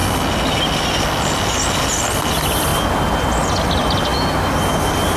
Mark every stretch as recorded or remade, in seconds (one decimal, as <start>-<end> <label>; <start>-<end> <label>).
0.0-5.2 recorded